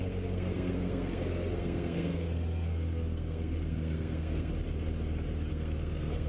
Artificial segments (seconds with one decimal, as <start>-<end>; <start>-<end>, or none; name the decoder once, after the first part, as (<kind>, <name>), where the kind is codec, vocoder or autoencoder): 0.0-4.5 (codec, SNAC); 5.5-6.3